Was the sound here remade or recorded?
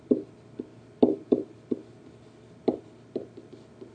recorded